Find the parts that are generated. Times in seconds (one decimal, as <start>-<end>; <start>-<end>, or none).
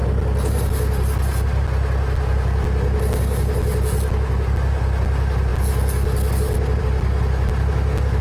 none